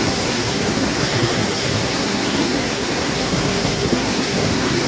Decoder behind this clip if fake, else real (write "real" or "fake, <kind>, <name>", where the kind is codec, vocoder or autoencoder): fake, codec, SNAC